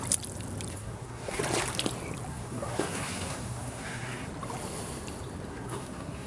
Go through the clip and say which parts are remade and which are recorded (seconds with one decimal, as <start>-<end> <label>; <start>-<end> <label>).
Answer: 0.0-0.7 recorded; 0.7-1.4 remade; 1.4-2.3 recorded; 2.3-4.3 remade; 4.3-5.5 recorded; 5.5-6.3 remade